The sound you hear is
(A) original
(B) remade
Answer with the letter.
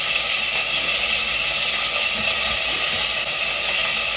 A